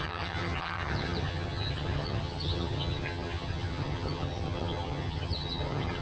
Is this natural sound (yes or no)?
no